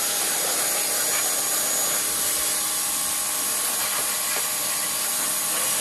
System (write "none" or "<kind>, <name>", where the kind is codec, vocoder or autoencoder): none